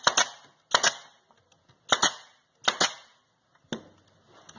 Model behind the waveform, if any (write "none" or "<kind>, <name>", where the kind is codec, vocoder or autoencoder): none